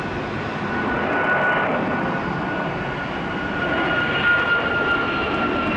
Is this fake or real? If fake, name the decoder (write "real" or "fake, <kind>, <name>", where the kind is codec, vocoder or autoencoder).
real